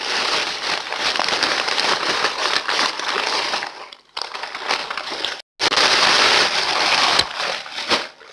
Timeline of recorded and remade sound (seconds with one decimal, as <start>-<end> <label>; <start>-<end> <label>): 0.0-8.3 recorded